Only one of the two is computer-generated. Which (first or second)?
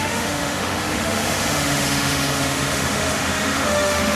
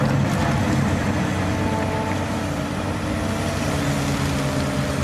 first